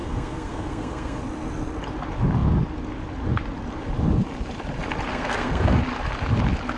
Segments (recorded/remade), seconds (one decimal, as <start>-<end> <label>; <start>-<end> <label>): 0.0-1.2 remade; 1.2-5.1 recorded; 5.1-5.8 remade; 5.8-6.8 recorded